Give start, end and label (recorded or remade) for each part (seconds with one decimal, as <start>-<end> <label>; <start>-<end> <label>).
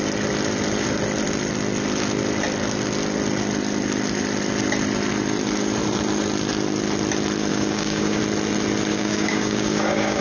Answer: 0.0-7.5 recorded; 7.5-8.2 remade; 8.2-8.9 recorded; 8.9-10.2 remade